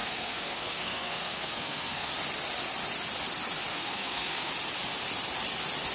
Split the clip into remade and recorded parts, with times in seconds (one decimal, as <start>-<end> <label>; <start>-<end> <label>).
0.0-2.1 remade; 2.1-3.7 recorded; 3.7-4.5 remade; 4.5-5.9 recorded